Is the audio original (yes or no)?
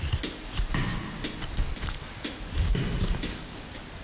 yes